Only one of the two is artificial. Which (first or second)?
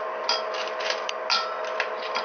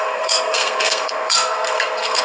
second